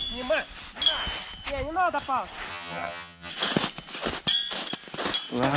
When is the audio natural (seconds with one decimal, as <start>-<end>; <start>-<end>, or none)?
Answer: 0.0-2.5; 3.3-5.6